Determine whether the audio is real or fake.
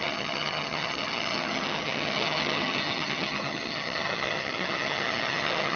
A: fake